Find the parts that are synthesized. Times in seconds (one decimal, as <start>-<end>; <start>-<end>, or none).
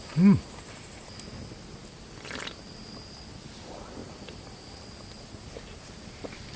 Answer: none